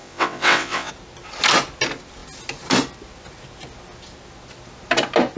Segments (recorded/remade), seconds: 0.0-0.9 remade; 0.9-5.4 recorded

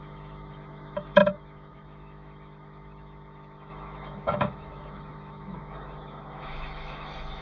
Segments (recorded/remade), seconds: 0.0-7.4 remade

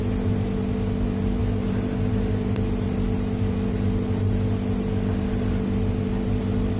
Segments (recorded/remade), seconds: 0.0-6.8 remade

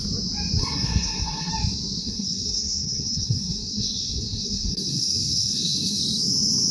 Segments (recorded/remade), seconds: 0.0-0.6 recorded; 0.6-1.5 remade; 1.5-2.0 recorded; 2.0-6.0 remade; 6.0-6.7 recorded